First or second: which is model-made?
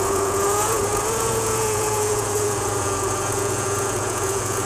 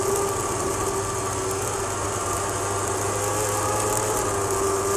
first